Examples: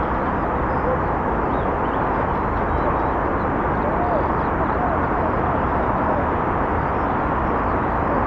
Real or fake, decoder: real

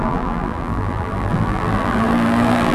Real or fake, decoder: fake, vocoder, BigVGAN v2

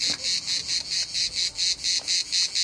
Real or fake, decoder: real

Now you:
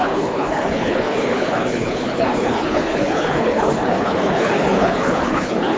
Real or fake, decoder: fake, codec, HILCodec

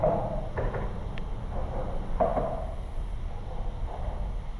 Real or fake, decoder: real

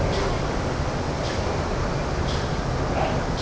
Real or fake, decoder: real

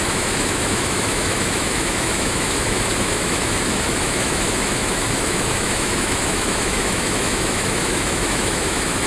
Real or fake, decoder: fake, autoencoder, DAC-VAE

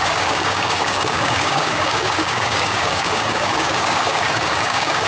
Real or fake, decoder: fake, codec, DAC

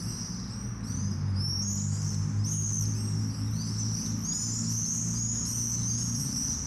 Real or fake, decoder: real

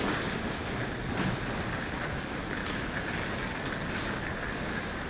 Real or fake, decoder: real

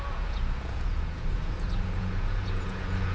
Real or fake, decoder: fake, vocoder, Vocos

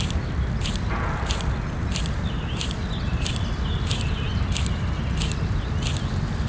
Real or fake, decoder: real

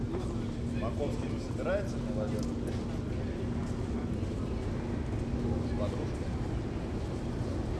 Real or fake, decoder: real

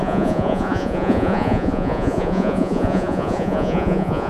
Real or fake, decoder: fake, vocoder, Vocos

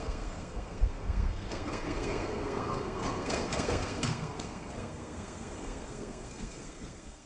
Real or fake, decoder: fake, codec, SNAC